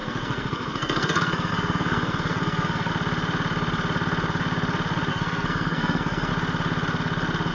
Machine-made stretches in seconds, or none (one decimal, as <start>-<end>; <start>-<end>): 0.0-2.9; 5.1-6.3